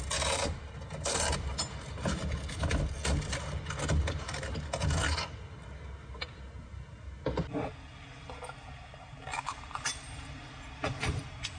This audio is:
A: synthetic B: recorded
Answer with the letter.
B